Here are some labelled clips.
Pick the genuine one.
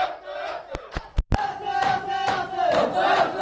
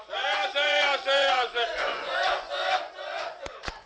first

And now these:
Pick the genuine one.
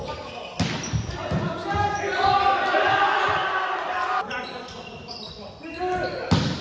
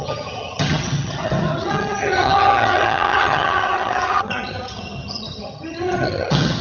first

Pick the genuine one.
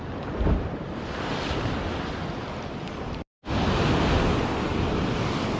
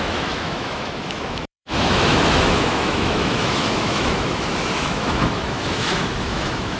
first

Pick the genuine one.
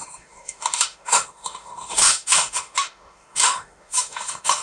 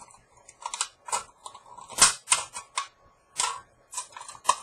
second